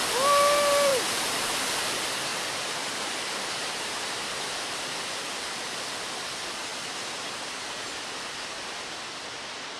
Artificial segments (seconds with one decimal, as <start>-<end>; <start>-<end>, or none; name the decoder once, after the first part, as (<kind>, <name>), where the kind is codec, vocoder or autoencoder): none